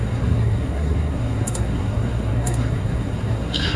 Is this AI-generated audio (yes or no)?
yes